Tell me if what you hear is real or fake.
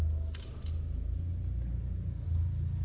real